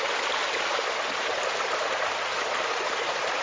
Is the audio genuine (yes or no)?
yes